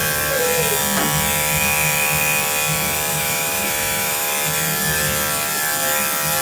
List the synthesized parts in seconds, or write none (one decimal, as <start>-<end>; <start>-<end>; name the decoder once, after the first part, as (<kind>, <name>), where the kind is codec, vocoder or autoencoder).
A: 3.1-4.3 (autoencoder, DAC-VAE)

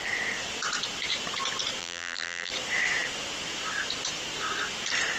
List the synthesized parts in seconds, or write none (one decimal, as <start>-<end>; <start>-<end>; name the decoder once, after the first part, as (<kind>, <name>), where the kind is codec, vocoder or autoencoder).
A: 1.8-2.5 (vocoder, BigVGAN v2)

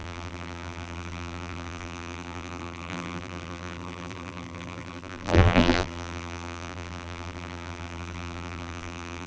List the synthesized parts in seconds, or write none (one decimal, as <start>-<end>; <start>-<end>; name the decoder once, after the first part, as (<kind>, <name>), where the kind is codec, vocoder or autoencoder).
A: 0.0-9.3 (vocoder, BigVGAN v2)

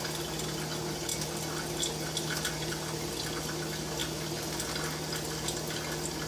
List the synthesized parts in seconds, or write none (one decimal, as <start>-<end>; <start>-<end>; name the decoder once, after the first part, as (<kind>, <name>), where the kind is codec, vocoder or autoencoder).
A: none

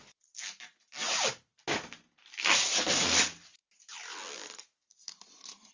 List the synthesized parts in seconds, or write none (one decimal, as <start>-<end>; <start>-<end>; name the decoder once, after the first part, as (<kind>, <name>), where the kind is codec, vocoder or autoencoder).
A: none

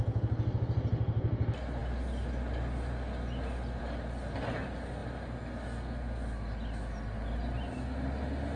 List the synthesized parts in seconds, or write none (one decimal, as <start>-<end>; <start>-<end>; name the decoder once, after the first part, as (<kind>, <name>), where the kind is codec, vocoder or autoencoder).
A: none

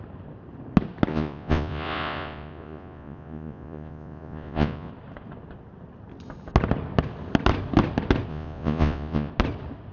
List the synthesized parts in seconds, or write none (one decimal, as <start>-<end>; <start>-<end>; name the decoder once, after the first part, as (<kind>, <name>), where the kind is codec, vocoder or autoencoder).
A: 1.1-4.9 (vocoder, Vocos); 8.3-9.3